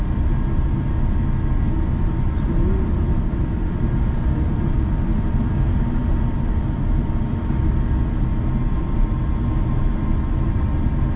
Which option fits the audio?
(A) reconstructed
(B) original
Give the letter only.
B